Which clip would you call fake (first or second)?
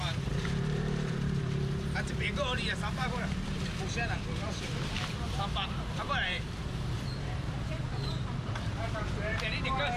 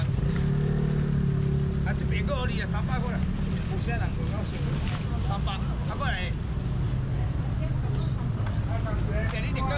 first